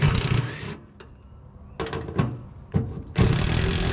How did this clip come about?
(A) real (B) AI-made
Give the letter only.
A